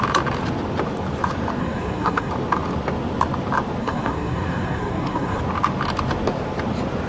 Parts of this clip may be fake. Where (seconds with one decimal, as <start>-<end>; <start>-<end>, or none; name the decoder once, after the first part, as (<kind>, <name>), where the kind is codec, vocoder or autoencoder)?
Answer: 1.6-2.3 (codec, SNAC); 3.8-5.4